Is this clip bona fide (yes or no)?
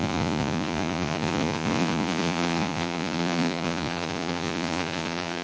no